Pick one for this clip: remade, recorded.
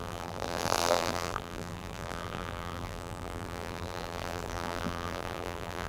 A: remade